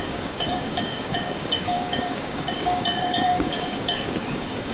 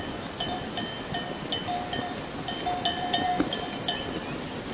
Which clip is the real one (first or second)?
second